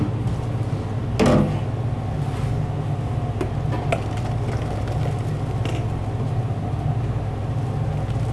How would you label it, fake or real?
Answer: real